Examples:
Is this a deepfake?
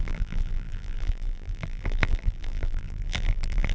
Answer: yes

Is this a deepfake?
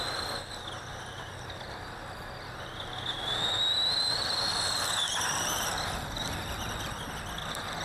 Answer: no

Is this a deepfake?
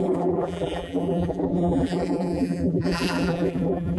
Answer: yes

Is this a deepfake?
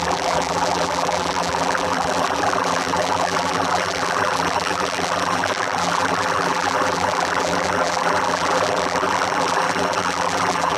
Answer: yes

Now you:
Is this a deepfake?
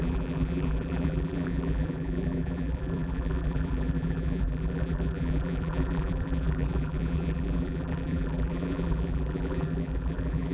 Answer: yes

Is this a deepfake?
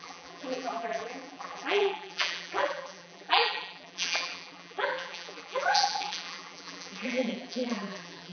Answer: yes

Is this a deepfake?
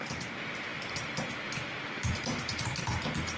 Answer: no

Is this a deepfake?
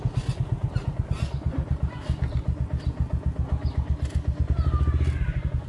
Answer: no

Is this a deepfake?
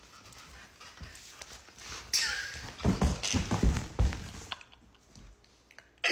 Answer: no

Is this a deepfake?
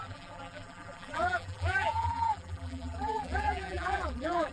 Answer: yes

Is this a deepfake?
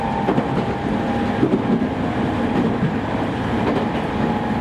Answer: no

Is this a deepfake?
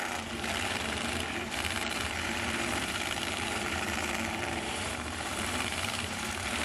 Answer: yes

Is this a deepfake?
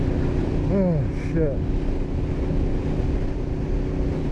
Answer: no